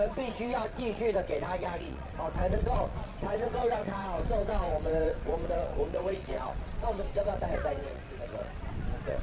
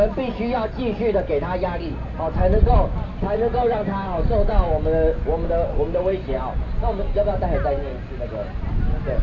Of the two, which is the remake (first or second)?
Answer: first